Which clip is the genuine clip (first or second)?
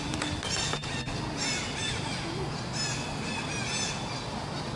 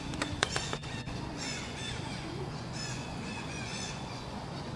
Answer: first